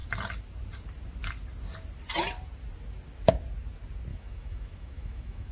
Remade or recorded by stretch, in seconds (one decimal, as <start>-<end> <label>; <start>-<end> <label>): 0.0-4.1 recorded; 4.1-5.5 remade